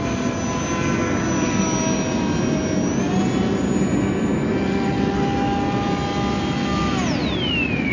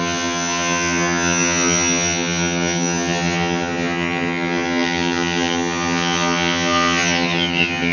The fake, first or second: second